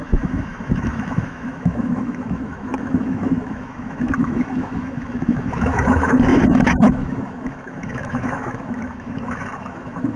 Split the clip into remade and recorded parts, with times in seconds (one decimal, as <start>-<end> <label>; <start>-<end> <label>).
0.0-10.2 remade